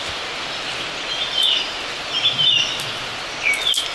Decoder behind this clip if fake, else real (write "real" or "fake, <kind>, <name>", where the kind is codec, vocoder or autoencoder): real